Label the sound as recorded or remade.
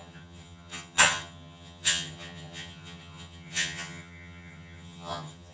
remade